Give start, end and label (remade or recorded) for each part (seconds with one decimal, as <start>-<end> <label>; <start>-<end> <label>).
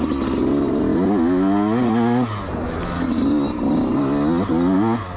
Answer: 0.0-5.2 recorded